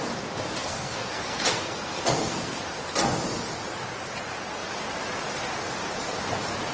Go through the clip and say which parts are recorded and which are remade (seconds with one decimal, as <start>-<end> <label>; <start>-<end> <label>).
0.0-0.6 recorded; 0.6-2.6 remade; 2.6-6.7 recorded